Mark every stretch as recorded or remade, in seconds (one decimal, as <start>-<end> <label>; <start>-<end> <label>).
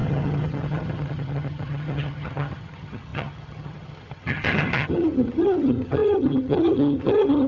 0.0-7.5 remade